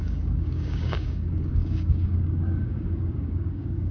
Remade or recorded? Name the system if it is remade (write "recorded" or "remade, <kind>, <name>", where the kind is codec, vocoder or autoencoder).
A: remade, codec, DAC